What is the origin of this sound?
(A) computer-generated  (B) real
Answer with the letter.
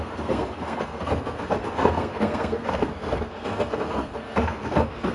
A